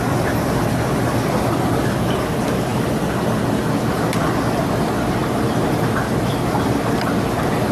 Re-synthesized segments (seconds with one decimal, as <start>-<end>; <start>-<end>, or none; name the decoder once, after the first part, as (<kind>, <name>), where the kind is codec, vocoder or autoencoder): none